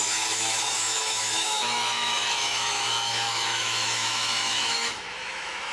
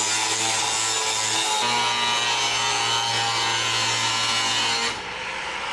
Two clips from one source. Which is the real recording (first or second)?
second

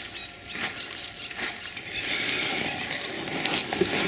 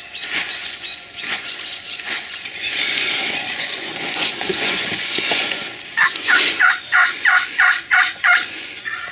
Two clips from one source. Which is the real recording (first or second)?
first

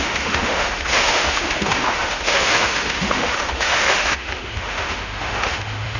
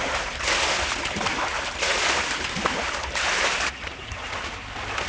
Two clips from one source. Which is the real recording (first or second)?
second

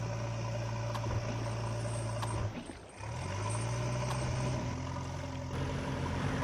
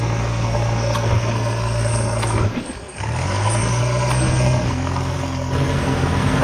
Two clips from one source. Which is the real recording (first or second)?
first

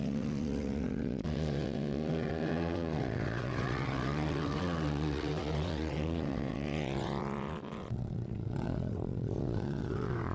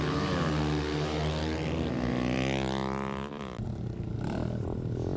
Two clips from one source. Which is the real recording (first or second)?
second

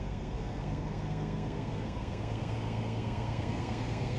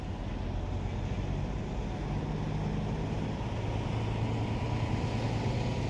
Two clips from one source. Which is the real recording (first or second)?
second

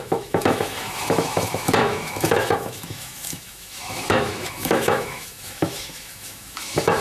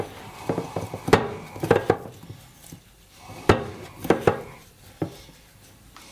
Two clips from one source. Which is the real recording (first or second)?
second